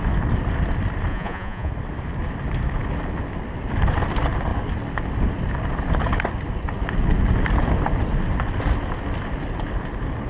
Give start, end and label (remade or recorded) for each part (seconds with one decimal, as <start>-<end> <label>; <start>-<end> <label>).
0.0-1.1 recorded; 1.1-1.7 remade; 1.7-10.3 recorded